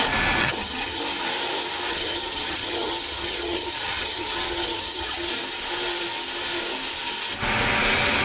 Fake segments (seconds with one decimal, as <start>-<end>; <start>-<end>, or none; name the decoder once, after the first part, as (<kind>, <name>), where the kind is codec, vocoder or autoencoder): 0.4-1.0 (vocoder, HiFi-GAN); 1.9-5.3